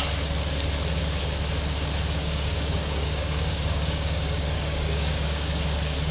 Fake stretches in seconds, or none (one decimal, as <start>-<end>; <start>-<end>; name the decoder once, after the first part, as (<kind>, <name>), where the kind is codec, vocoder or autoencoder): 2.2-5.5 (codec, DAC)